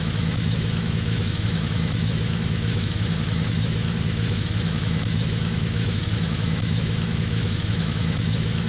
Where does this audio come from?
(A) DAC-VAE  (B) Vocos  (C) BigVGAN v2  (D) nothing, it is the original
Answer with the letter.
A